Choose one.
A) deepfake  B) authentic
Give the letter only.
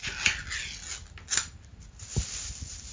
B